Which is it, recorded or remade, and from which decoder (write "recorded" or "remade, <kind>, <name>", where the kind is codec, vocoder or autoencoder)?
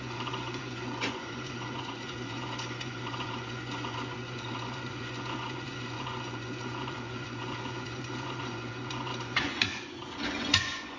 remade, vocoder, Vocos